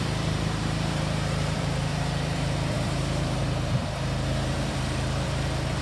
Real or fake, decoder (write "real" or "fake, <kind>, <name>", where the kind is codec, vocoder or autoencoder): fake, vocoder, BigVGAN v2